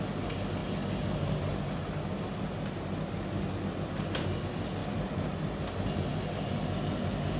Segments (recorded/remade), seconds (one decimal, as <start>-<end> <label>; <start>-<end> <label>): 0.0-7.4 recorded